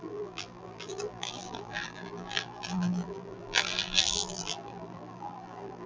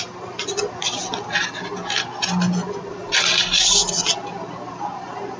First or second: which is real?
second